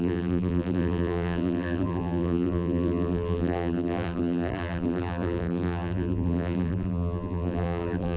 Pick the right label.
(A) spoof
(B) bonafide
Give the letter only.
A